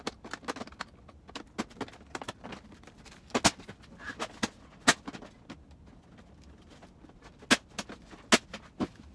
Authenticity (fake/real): real